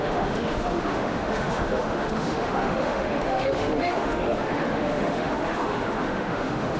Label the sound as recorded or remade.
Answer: remade